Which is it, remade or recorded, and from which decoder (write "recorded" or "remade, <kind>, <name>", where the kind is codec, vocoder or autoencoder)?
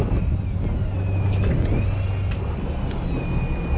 recorded